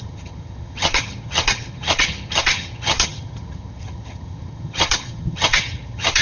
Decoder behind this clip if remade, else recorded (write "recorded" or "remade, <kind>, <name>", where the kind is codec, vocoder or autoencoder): remade, vocoder, HiFi-GAN